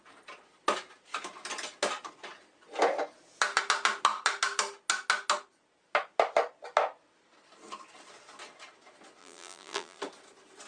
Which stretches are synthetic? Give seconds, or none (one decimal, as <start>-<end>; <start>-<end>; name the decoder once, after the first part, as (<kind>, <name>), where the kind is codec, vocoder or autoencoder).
9.2-10.0 (vocoder, BigVGAN v2)